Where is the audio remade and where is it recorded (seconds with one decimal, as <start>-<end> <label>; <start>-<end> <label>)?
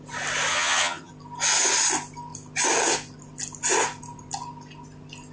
0.0-0.5 recorded; 0.5-1.1 remade; 1.1-5.3 recorded